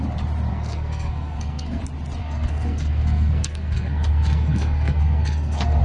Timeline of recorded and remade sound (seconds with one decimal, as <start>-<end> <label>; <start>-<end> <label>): 0.0-0.5 recorded; 0.5-1.8 remade; 1.8-2.2 recorded; 2.2-5.8 remade